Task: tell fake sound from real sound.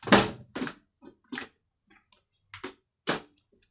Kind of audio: real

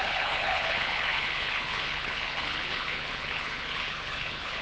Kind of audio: fake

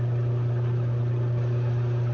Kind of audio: real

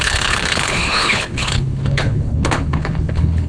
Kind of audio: fake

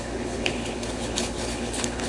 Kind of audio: fake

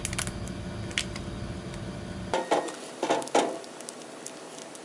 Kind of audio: real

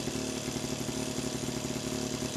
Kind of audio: real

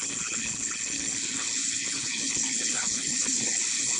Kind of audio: fake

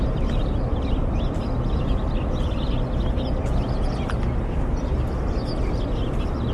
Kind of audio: real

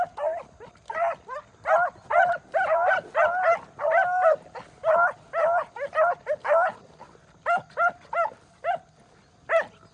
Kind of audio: real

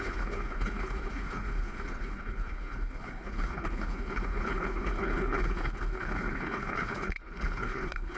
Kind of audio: fake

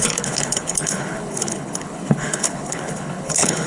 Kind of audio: fake